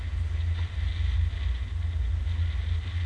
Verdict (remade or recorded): recorded